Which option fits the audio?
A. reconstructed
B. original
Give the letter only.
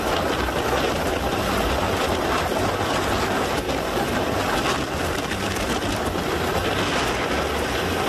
B